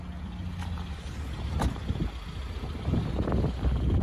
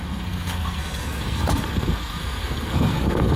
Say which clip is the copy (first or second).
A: second